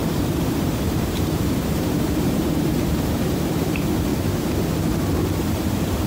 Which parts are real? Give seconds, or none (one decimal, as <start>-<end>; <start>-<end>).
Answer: 4.1-5.4